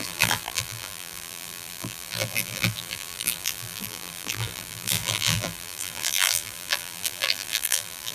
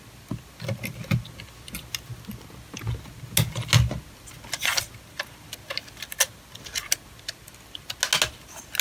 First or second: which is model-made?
first